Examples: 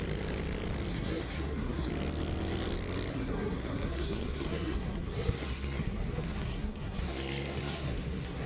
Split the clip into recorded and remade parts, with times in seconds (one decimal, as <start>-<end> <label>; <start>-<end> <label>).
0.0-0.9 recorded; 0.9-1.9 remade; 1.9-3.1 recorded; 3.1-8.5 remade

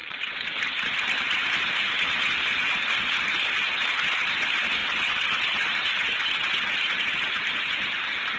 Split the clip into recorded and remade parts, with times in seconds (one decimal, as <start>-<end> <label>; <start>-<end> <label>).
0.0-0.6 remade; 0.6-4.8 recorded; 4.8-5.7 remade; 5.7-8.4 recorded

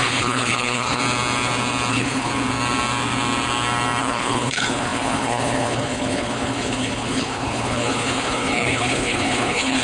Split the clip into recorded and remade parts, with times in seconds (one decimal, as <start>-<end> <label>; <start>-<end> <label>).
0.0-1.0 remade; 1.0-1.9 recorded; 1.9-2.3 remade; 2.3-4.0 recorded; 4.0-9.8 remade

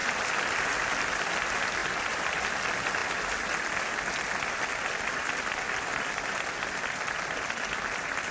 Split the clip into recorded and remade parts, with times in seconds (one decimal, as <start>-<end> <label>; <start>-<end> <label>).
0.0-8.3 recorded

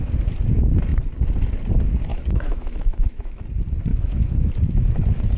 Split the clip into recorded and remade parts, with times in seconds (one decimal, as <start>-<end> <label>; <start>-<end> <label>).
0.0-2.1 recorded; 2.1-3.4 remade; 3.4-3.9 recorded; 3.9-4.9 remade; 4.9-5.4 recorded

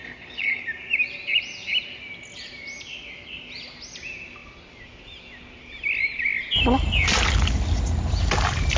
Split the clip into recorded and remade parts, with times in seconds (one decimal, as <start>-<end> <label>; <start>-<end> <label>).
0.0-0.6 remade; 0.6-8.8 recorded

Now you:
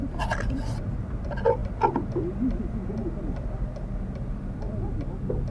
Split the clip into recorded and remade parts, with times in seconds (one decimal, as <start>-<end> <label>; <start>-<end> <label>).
0.0-5.5 recorded